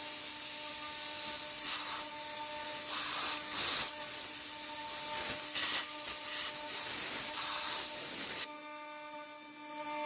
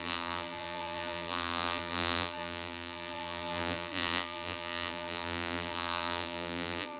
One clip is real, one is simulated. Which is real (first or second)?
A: first